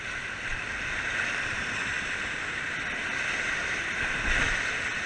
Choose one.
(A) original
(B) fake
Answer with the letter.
A